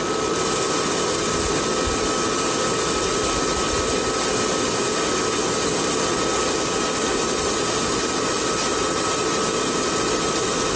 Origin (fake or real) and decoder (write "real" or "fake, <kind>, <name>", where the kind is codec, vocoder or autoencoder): real